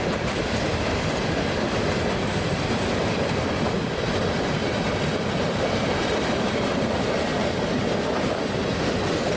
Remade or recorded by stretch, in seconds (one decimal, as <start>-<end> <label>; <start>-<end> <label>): 0.0-7.3 remade; 7.3-8.3 recorded; 8.3-9.4 remade